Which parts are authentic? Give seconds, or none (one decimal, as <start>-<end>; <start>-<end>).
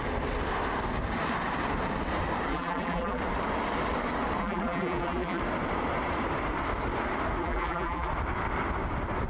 0.0-2.5; 3.2-4.4; 5.4-7.4; 8.1-9.3